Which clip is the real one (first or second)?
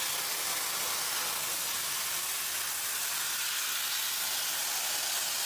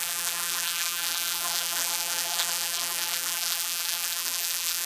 first